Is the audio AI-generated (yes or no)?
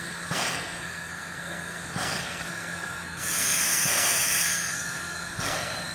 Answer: yes